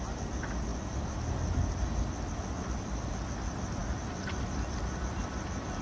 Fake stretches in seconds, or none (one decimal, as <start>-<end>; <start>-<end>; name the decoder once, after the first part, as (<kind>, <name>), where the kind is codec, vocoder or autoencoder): none